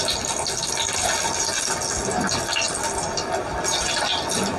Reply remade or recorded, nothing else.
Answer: recorded